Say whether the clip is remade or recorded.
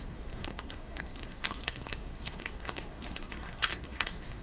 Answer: remade